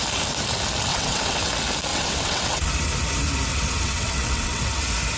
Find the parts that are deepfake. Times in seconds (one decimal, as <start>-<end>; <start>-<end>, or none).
0.9-1.5; 1.9-2.7; 3.5-4.8